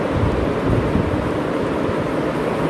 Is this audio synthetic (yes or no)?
no